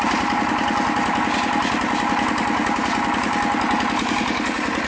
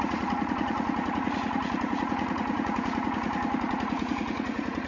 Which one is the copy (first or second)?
second